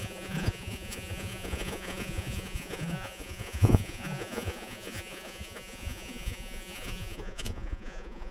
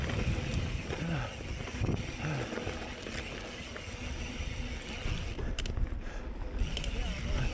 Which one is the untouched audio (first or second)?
second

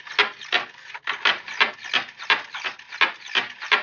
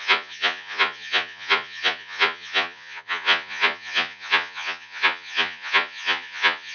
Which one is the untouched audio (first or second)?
first